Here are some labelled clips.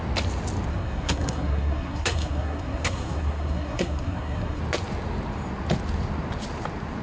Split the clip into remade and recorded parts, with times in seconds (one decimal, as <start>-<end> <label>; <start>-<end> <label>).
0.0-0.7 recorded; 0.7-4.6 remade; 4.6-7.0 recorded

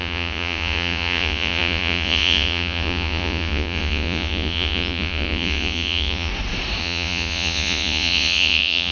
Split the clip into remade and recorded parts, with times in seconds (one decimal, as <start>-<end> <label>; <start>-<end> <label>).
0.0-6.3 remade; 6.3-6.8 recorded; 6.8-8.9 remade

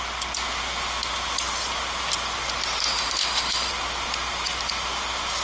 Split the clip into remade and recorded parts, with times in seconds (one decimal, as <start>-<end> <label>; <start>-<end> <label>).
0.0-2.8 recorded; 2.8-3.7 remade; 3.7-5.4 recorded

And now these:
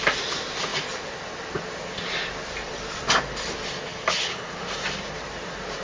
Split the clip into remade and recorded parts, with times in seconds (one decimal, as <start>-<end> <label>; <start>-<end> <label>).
0.0-3.9 recorded; 3.9-4.6 remade; 4.6-5.8 recorded